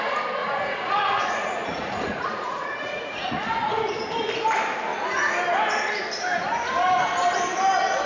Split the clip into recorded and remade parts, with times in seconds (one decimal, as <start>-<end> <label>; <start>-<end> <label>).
0.0-0.4 recorded; 0.4-3.7 remade; 3.7-8.1 recorded